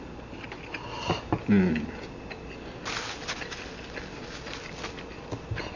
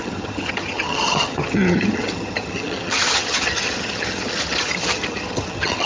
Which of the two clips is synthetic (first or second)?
second